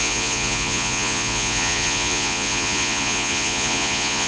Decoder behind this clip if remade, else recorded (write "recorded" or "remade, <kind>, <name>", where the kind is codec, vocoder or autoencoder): remade, vocoder, Vocos